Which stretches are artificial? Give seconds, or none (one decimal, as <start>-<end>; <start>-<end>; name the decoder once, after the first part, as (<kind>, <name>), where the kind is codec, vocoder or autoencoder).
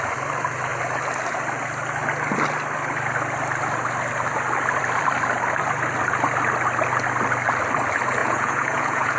8.2-9.2 (vocoder, Vocos)